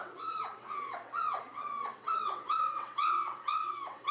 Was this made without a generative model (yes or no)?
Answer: no